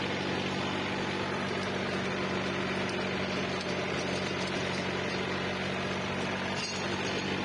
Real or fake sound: real